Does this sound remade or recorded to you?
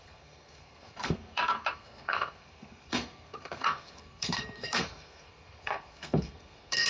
remade